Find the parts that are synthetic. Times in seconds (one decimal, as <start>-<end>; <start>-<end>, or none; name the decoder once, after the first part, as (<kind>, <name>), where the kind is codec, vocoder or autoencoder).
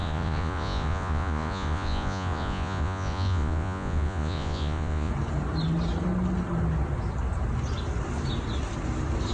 0.0-5.1 (vocoder, Vocos)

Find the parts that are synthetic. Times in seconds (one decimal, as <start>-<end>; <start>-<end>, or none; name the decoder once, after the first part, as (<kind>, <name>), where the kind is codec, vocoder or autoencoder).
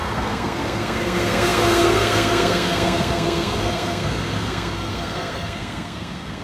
0.0-6.4 (codec, SNAC)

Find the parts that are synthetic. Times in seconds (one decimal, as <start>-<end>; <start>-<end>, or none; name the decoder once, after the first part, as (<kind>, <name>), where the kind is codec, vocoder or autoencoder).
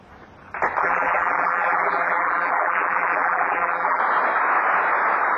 0.8-4.0 (vocoder, BigVGAN v2)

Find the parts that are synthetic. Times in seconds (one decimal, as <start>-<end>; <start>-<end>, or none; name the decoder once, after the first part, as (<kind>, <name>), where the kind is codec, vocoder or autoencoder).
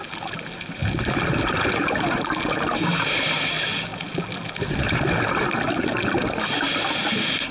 none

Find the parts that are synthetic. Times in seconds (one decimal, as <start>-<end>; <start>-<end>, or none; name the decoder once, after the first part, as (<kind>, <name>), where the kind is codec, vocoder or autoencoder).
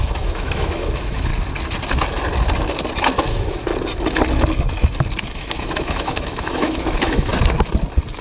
0.0-1.3 (autoencoder, DAC-VAE); 3.3-3.7; 5.3-7.3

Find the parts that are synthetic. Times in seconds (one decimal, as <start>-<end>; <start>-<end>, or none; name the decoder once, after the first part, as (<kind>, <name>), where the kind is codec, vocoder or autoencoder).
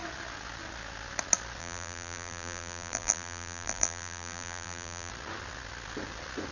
1.6-5.1 (vocoder, BigVGAN v2)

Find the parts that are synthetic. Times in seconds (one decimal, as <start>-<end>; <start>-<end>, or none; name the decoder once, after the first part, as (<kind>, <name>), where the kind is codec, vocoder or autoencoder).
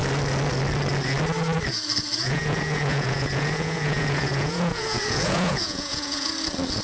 2.2-6.3 (vocoder, Vocos)